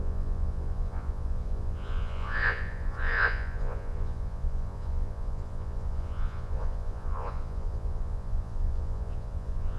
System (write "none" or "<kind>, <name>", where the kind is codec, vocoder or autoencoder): vocoder, Vocos